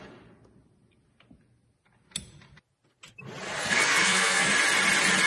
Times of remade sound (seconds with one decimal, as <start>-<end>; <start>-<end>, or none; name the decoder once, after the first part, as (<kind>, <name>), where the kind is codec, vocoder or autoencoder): 3.6-4.5 (codec, SNAC)